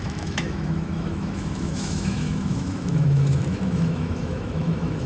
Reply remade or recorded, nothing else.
remade